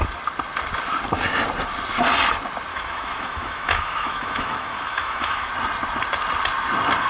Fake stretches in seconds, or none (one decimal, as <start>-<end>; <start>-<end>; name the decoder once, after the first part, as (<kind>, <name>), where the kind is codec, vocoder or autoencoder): 2.7-5.5 (autoencoder, DAC-VAE)